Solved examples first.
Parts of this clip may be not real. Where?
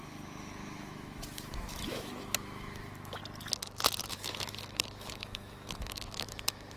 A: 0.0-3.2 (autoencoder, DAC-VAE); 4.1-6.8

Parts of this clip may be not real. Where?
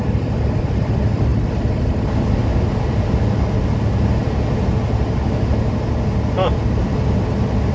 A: none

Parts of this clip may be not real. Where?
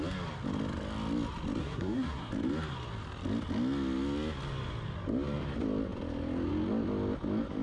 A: 1.6-2.3 (codec, SNAC)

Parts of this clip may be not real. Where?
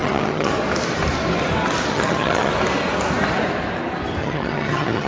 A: 0.0-0.5 (vocoder, HiFi-GAN); 1.9-2.5; 4.2-5.1